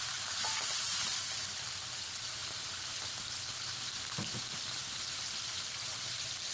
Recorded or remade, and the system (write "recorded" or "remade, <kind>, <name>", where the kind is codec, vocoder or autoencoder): recorded